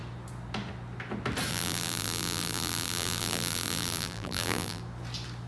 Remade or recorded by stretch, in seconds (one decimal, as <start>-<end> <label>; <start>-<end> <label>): 0.0-1.5 recorded; 1.5-4.8 remade; 4.8-5.5 recorded

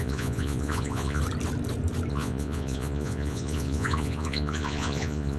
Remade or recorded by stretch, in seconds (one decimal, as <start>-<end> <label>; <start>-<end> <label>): 0.0-1.2 remade; 1.2-2.1 recorded; 2.1-5.4 remade